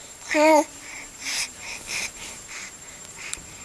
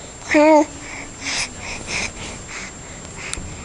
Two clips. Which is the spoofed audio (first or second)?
first